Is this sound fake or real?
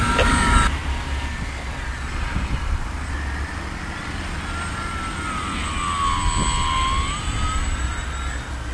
real